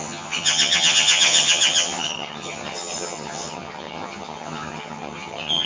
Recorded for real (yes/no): no